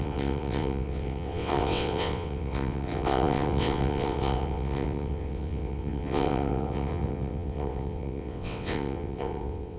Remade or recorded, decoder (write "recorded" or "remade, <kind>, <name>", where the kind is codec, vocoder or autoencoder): remade, vocoder, WaveNeXt